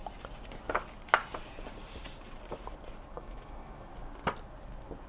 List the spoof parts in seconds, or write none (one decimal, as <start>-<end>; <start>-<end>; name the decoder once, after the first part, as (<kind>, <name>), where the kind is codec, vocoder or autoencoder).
3.1-3.9 (autoencoder, DAC-VAE)